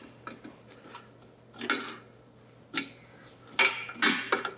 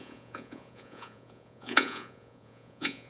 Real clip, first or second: first